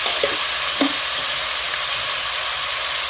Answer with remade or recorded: recorded